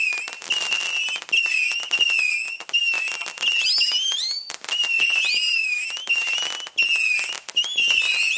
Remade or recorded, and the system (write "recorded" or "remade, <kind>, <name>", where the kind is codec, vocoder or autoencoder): recorded